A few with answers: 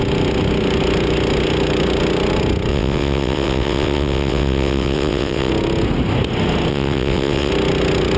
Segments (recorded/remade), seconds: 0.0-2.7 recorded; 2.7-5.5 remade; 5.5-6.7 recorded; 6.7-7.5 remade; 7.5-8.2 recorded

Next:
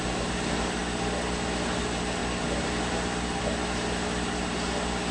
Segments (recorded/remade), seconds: 0.0-5.1 recorded